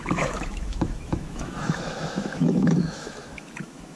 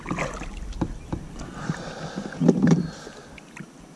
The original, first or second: second